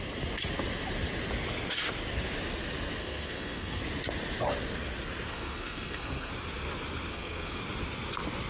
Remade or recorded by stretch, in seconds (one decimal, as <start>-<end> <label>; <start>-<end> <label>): 0.0-3.0 recorded; 3.0-3.8 remade; 3.8-5.3 recorded; 5.3-6.3 remade; 6.3-7.1 recorded; 7.1-7.6 remade; 7.6-8.5 recorded

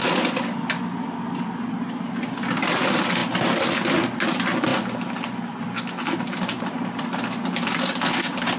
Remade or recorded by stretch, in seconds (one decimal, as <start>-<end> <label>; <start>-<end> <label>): 0.0-8.6 recorded

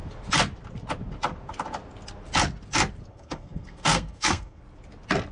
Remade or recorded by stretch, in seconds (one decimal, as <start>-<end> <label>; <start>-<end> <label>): 0.0-3.1 recorded; 3.1-4.6 remade; 4.6-5.3 recorded

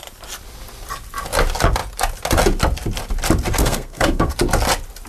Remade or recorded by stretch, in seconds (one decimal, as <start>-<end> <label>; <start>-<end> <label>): 0.0-3.6 recorded; 3.6-4.3 remade; 4.3-5.1 recorded